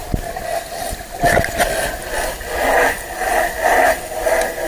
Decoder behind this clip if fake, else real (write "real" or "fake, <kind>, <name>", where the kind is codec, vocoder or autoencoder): real